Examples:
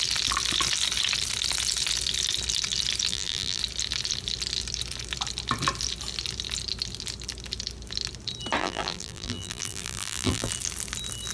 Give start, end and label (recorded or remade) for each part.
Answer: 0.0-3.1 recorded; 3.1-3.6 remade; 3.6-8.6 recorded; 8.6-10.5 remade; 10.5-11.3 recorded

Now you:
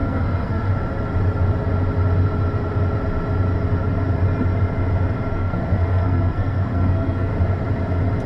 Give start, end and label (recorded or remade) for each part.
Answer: 0.0-0.7 remade; 0.7-5.3 recorded; 5.3-7.3 remade; 7.3-8.3 recorded

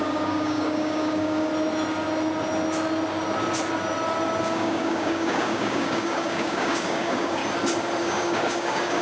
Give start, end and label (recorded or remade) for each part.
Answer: 0.0-1.5 remade; 1.5-4.4 recorded; 4.4-7.4 remade; 7.4-8.0 recorded; 8.0-9.0 remade

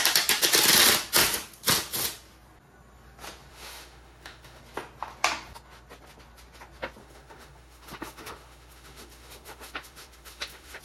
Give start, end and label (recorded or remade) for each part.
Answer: 0.0-3.5 recorded; 3.5-4.6 remade; 4.6-7.0 recorded; 7.0-10.8 remade

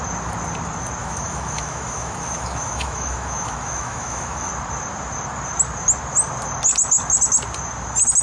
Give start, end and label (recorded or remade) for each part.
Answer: 0.0-1.0 recorded; 1.0-4.5 remade; 4.5-8.2 recorded

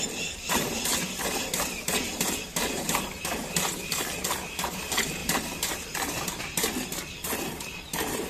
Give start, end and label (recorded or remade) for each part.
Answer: 0.0-8.3 recorded

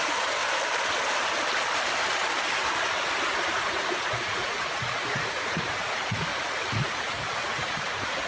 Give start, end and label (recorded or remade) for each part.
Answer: 0.0-0.4 remade; 0.4-3.5 recorded; 3.5-6.3 remade; 6.3-6.8 recorded; 6.8-8.3 remade

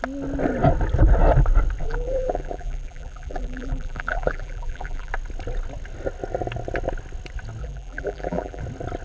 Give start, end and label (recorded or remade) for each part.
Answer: 0.0-1.8 recorded; 1.8-5.1 remade; 5.1-7.6 recorded; 7.6-8.6 remade; 8.6-9.0 recorded